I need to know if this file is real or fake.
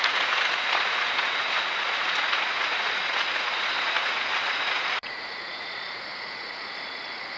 fake